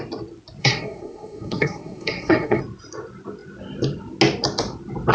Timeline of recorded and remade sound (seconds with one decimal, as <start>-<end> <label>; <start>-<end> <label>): 0.0-0.6 recorded; 0.6-2.6 remade; 2.6-5.1 recorded